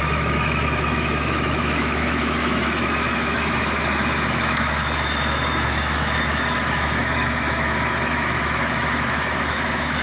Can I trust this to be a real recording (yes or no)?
no